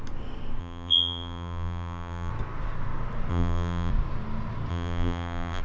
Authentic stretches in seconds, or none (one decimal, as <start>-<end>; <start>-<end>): 0.0-0.6; 2.3-3.3; 3.9-4.7